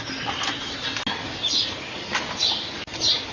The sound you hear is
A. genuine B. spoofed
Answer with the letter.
A